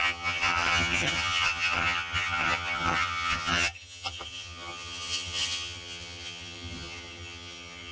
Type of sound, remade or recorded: remade